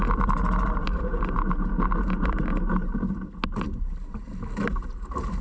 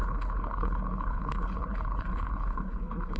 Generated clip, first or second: second